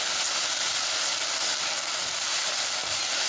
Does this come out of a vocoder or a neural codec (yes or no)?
no